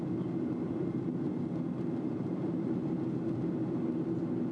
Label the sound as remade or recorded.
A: recorded